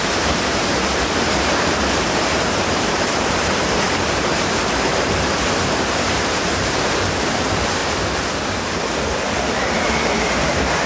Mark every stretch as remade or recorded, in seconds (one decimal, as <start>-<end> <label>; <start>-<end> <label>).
0.0-7.8 remade; 7.8-9.3 recorded; 9.3-10.9 remade